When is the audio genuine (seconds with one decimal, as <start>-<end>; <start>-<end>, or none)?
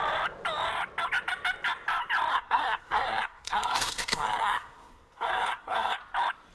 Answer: 0.0-2.3; 6.0-6.5